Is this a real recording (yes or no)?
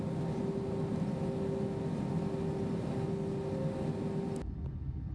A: yes